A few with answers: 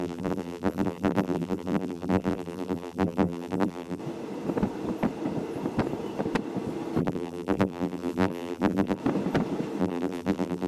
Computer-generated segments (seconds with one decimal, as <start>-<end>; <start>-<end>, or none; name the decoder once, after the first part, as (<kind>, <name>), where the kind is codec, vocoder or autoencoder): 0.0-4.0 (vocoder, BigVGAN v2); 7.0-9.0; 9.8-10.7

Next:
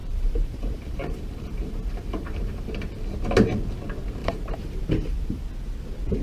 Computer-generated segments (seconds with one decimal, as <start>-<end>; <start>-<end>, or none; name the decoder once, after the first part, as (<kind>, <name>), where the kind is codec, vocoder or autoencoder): 0.0-2.7 (vocoder, BigVGAN v2); 4.2-5.4

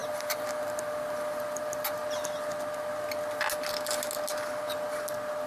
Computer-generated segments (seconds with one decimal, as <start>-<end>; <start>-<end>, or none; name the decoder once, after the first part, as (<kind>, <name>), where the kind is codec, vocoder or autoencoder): 0.0-2.0 (vocoder, BigVGAN v2)

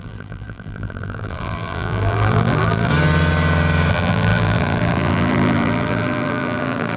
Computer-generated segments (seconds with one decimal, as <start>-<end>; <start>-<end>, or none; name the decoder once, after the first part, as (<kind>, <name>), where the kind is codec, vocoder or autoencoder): 0.0-2.9 (vocoder, BigVGAN v2); 3.9-7.0

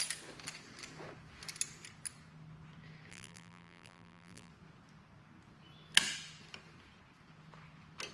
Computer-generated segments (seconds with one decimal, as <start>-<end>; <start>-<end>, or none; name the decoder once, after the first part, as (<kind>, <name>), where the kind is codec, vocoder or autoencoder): 3.1-4.5 (vocoder, BigVGAN v2)

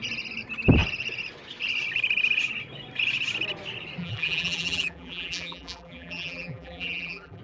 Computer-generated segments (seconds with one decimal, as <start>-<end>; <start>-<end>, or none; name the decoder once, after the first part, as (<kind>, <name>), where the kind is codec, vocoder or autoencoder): 4.0-7.4 (vocoder, BigVGAN v2)

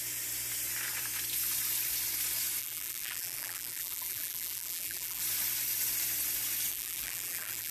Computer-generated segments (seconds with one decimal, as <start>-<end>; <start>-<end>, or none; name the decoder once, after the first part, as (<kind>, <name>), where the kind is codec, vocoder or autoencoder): 2.6-5.2 (vocoder, BigVGAN v2); 6.7-7.7

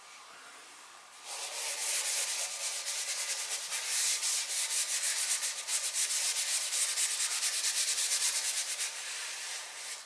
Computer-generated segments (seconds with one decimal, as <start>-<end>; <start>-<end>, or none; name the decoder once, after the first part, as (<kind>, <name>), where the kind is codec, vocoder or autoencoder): none